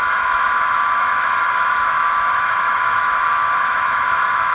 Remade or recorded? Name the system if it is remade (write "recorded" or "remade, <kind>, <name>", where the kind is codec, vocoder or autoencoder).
remade, autoencoder, DAC-VAE